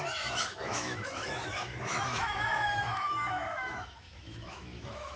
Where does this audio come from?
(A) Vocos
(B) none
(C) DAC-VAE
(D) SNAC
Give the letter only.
C